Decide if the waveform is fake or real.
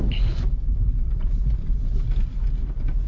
real